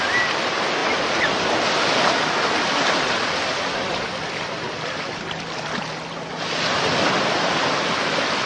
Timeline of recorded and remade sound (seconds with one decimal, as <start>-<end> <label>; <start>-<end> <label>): 0.0-0.8 remade; 0.8-3.0 recorded; 3.0-8.5 remade